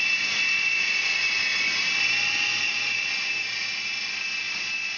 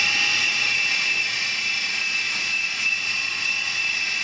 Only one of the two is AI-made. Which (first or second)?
second